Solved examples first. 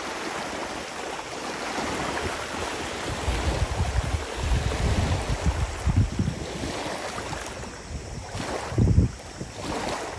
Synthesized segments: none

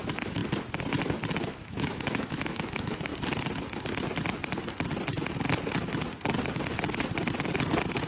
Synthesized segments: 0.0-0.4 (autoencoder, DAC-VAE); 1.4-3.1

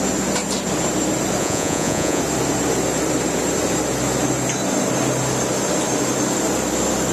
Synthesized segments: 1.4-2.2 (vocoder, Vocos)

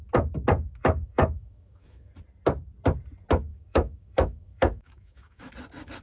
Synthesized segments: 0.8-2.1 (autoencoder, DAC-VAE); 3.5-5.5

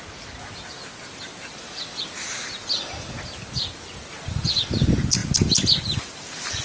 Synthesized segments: none

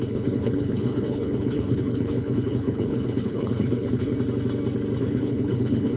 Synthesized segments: 0.0-4.1 (codec, HILCodec); 5.0-6.0